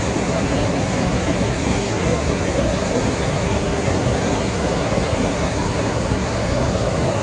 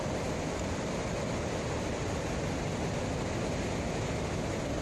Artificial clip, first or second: first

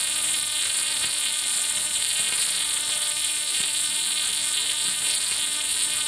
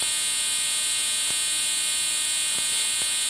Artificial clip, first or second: first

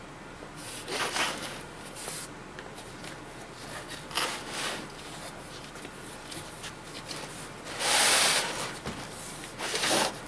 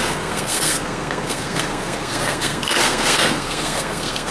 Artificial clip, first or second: second